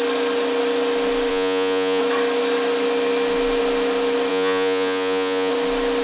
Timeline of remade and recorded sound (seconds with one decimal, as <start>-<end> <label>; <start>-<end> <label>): 0.0-1.3 recorded; 1.3-2.0 remade; 2.0-4.3 recorded; 4.3-5.5 remade; 5.5-6.0 recorded

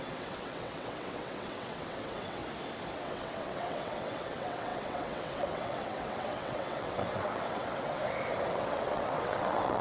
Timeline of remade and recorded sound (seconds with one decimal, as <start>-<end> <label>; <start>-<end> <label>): 0.0-2.4 remade; 2.4-3.0 recorded; 3.0-8.0 remade; 8.0-8.5 recorded; 8.5-9.8 remade

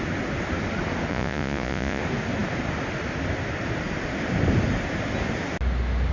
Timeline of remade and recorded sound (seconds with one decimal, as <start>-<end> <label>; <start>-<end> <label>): 0.0-1.1 recorded; 1.1-2.0 remade; 2.0-6.1 recorded

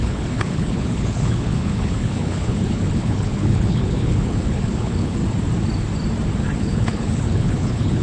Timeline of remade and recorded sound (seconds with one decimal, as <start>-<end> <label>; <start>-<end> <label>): 0.0-5.2 remade; 5.2-6.6 recorded; 6.6-8.0 remade